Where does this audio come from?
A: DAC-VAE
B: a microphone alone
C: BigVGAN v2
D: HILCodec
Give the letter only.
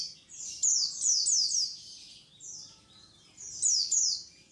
B